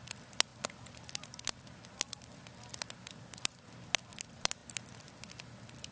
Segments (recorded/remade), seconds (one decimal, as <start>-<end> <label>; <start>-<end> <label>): 0.0-5.9 recorded